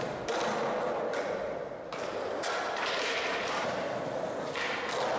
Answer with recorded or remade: recorded